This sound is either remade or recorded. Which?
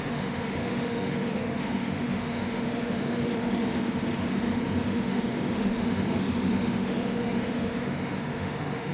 remade